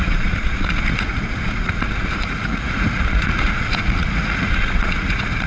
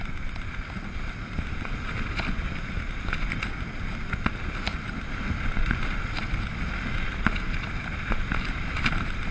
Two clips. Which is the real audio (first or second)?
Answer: second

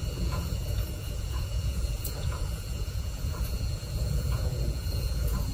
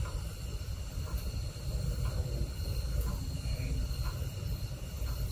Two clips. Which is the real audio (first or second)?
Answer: second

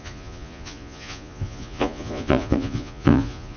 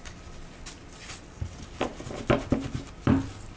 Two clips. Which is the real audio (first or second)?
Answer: second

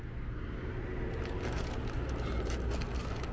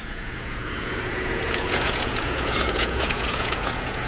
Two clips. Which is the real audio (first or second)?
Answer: first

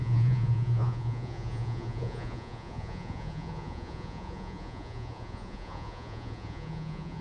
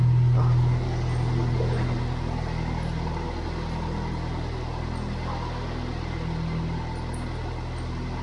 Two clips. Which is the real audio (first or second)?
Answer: second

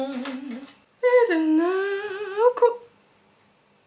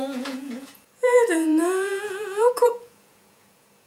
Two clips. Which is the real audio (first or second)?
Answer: first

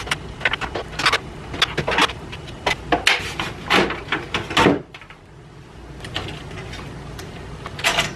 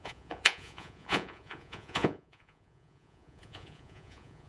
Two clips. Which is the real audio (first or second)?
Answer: first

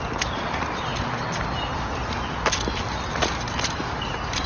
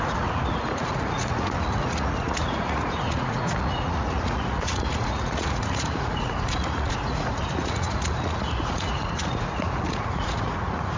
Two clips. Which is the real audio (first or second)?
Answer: first